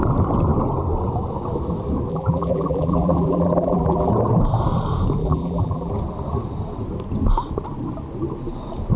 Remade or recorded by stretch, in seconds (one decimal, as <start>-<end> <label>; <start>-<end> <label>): 0.0-2.1 recorded; 2.1-4.1 remade; 4.1-5.2 recorded; 5.2-5.9 remade; 5.9-9.0 recorded